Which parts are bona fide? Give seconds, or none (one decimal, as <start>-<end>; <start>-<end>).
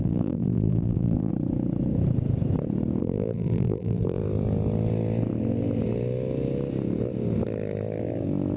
1.3-3.0; 4.2-8.6